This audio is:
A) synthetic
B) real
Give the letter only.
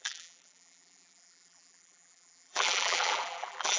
A